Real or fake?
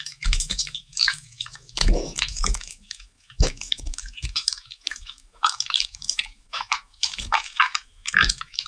fake